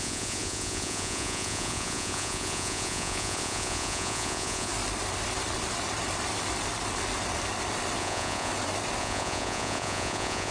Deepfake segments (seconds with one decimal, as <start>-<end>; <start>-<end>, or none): 0.0-4.7; 8.0-8.5; 9.0-10.5